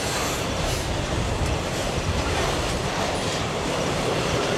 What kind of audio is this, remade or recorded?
remade